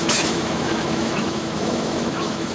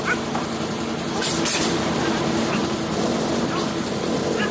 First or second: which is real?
second